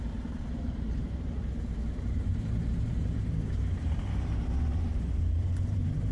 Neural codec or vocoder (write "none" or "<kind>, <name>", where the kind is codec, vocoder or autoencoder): vocoder, BigVGAN v2